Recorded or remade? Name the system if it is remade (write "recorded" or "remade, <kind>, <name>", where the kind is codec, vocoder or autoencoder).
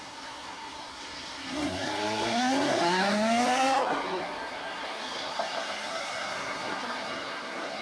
remade, codec, SNAC